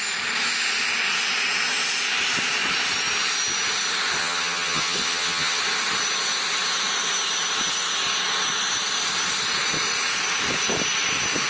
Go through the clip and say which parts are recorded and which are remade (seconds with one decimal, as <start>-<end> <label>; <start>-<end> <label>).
0.0-4.2 recorded; 4.2-5.6 remade; 5.6-11.5 recorded